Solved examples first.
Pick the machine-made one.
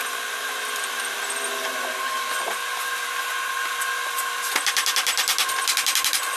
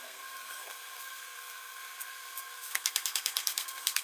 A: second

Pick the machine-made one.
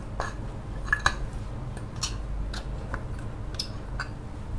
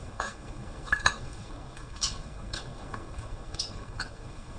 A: second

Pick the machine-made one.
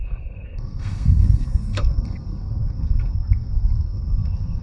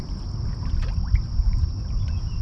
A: first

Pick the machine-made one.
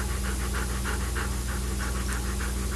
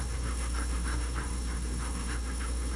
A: second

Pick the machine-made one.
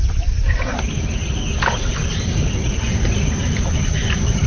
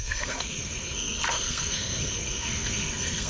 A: second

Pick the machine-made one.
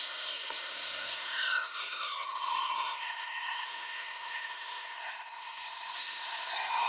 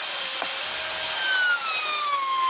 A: first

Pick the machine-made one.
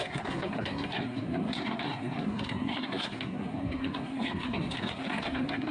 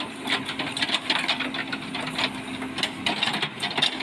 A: first